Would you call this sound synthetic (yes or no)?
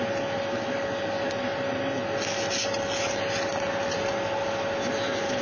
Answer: no